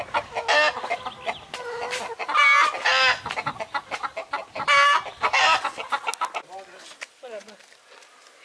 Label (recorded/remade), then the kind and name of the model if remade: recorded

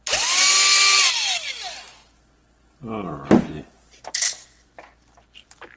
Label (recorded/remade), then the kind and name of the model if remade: recorded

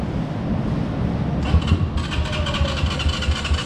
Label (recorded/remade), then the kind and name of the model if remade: recorded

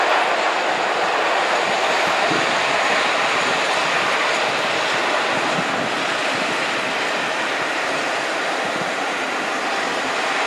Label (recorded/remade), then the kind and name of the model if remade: recorded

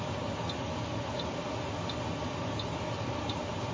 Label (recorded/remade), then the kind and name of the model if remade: recorded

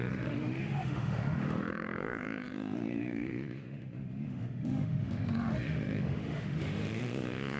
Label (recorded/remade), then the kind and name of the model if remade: remade, autoencoder, DAC-VAE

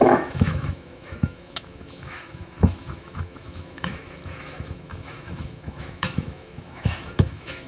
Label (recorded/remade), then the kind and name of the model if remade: remade, autoencoder, DAC-VAE